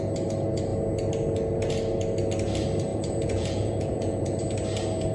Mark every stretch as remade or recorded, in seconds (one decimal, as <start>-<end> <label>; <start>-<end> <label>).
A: 0.0-2.9 recorded; 2.9-4.4 remade; 4.4-5.1 recorded